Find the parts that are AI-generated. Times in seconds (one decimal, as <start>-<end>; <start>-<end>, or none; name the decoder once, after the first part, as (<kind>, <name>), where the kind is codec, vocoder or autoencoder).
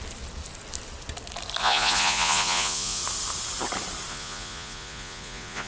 1.6-3.0 (vocoder, Vocos); 4.1-5.7